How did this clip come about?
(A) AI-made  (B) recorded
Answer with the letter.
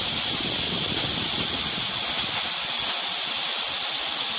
B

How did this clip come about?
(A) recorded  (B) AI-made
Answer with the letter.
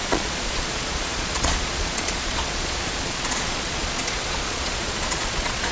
B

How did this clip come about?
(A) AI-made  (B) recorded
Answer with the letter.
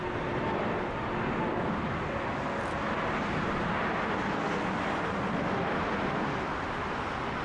B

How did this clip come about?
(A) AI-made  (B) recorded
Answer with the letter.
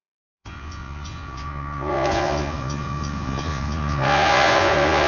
A